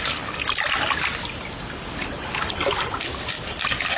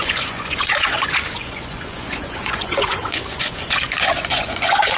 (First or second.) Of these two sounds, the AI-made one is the second